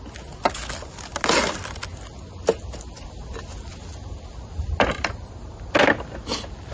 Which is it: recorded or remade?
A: recorded